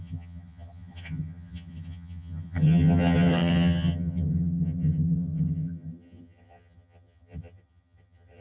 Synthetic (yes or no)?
yes